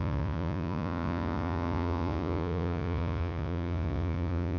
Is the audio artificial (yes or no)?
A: yes